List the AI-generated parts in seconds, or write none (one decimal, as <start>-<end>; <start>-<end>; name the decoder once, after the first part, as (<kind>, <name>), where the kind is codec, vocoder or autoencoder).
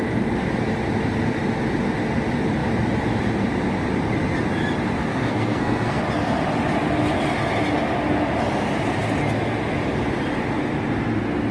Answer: 5.1-6.0 (codec, SNAC)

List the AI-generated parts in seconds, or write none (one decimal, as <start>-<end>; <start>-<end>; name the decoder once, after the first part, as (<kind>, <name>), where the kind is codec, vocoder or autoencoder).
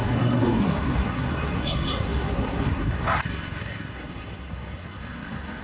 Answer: 0.0-5.6 (codec, SNAC)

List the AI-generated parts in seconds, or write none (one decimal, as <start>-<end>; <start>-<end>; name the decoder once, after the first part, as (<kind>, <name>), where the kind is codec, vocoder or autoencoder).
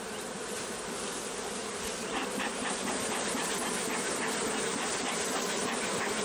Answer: 0.0-3.4 (vocoder, BigVGAN v2); 4.2-6.2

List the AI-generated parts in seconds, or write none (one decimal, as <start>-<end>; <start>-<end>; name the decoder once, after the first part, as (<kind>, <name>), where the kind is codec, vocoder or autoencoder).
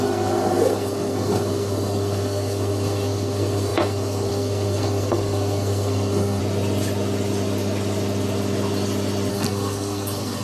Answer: 0.0-6.4 (codec, SNAC); 9.3-10.4